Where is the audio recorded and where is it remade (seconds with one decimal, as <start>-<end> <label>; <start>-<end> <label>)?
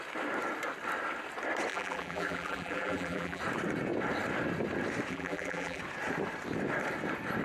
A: 0.0-1.7 recorded; 1.7-3.4 remade; 3.4-5.1 recorded; 5.1-5.8 remade; 5.8-7.4 recorded